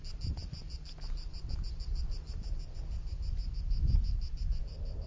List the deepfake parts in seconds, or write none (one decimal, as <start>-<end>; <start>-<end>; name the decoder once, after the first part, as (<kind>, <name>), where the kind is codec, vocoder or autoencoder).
none